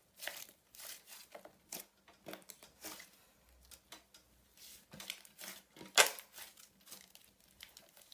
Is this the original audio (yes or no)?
yes